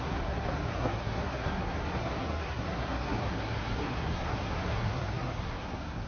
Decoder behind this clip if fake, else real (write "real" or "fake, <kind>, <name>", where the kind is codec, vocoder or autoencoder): fake, codec, SNAC